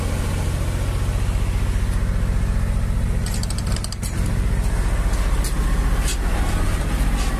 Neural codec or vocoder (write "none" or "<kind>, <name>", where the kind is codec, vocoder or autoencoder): none